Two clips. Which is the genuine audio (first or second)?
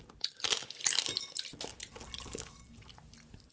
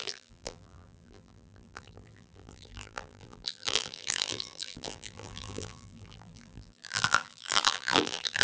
first